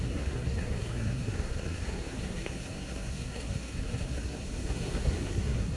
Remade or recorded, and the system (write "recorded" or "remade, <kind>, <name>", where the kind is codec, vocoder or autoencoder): remade, codec, SNAC